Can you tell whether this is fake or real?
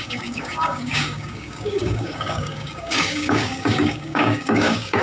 fake